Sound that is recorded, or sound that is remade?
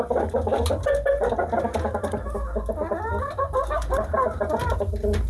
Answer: recorded